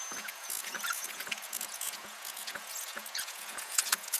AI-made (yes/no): yes